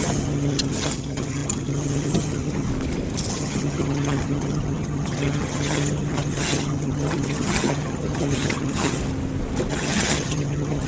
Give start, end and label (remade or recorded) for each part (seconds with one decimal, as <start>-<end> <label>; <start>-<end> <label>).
0.0-2.7 remade; 2.7-3.3 recorded; 3.3-9.0 remade; 9.0-9.7 recorded; 9.7-10.9 remade